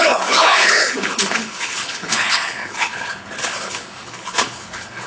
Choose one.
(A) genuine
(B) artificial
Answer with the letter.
B